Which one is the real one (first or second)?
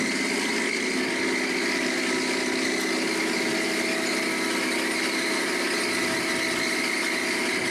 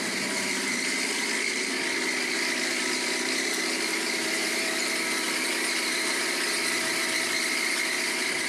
first